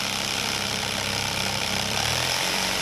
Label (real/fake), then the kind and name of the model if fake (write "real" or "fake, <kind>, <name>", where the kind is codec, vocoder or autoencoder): fake, vocoder, BigVGAN v2